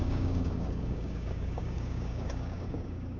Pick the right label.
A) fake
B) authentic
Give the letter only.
A